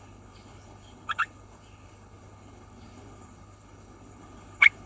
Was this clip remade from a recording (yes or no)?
yes